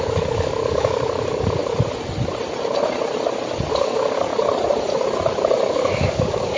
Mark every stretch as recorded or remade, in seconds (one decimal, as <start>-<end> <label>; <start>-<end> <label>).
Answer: 0.0-1.6 remade; 1.6-3.7 recorded; 3.7-4.3 remade; 4.3-5.7 recorded; 5.7-6.6 remade